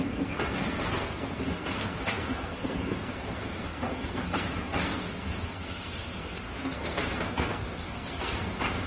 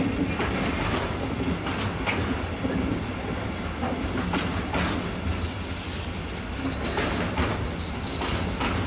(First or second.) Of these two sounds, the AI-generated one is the first